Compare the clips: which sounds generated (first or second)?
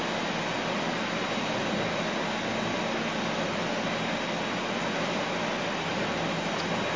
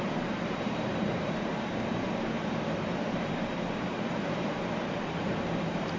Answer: second